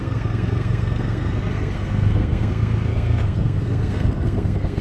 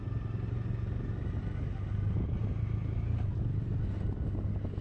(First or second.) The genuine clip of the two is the second